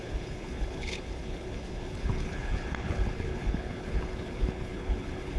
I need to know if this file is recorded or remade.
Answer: remade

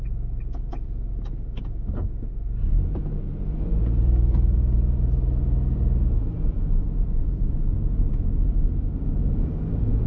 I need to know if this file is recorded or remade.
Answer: remade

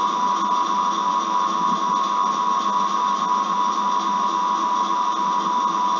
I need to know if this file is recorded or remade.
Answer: recorded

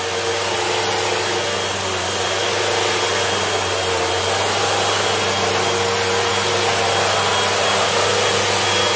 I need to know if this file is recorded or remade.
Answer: recorded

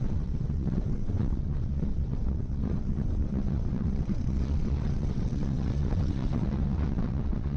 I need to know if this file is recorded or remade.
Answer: remade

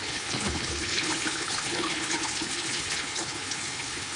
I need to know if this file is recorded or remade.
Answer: remade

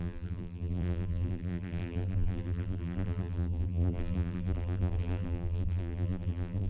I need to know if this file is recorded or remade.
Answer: remade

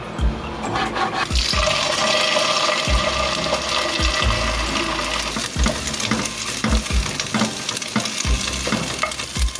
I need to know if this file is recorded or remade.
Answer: recorded